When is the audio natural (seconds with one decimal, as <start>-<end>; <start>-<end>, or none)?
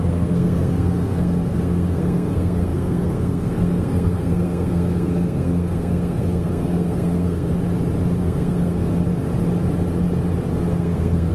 7.5-8.2; 8.9-10.7